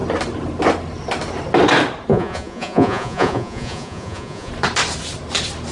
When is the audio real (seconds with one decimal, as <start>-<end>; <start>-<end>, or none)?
0.0-2.1; 4.5-5.7